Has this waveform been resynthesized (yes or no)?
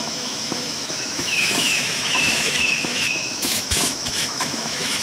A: yes